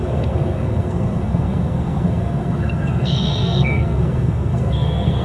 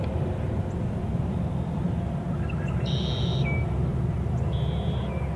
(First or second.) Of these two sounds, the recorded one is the second